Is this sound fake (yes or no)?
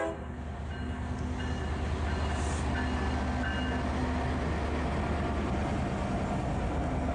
no